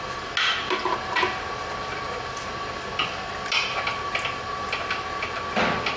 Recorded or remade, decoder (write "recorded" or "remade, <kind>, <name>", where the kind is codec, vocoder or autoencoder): recorded